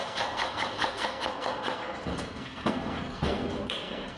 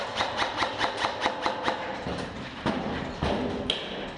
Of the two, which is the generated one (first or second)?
first